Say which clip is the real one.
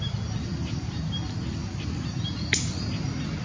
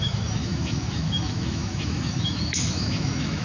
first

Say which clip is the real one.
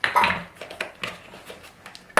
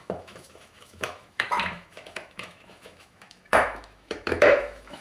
first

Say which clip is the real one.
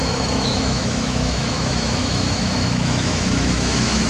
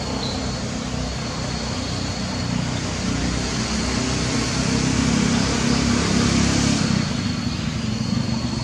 second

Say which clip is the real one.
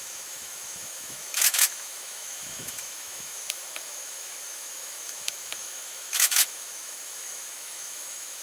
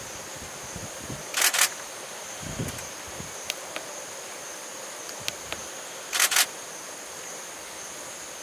second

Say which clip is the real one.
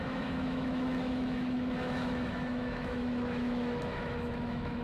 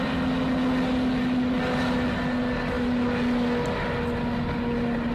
second